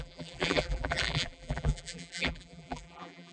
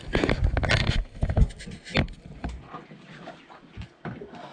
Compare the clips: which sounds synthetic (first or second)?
first